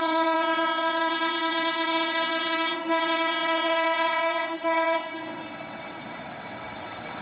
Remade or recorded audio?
remade